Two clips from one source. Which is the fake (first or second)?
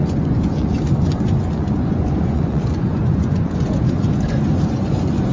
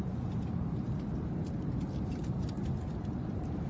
first